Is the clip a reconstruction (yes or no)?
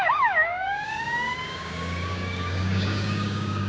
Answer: yes